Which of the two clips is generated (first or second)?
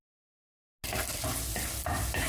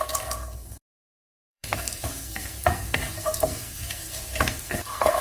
second